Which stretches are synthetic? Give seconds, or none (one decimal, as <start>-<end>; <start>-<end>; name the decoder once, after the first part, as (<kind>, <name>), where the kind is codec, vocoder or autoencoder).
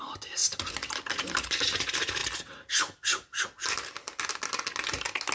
none